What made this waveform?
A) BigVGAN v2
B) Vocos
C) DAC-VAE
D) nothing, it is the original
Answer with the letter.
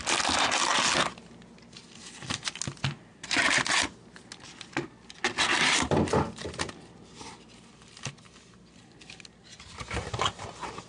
D